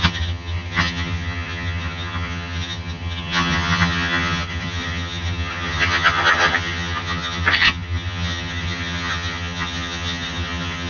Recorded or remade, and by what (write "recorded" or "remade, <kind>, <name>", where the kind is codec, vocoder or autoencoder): remade, vocoder, HiFi-GAN